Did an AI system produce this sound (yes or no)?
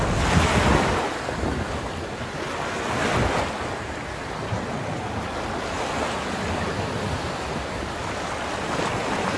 no